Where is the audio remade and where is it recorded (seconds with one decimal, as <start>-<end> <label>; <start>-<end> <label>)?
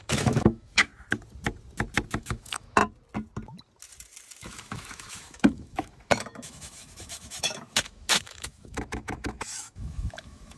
0.0-0.9 remade; 0.9-2.2 recorded; 2.2-2.8 remade; 2.8-4.4 recorded; 4.4-10.6 remade